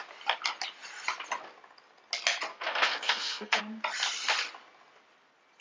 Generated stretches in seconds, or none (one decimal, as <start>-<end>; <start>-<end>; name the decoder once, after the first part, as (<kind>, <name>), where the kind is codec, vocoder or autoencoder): 2.5-3.6 (codec, SNAC)